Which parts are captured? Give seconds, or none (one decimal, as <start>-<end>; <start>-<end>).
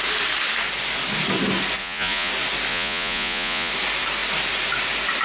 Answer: 0.0-1.8; 2.3-2.7; 3.7-5.2